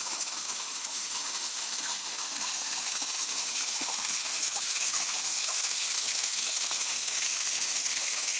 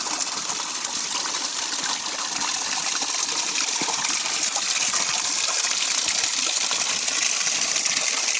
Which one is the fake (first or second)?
first